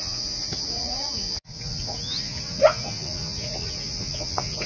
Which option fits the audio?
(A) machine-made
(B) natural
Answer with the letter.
A